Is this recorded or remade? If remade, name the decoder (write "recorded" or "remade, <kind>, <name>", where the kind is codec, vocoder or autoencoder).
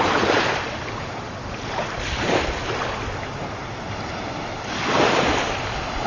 recorded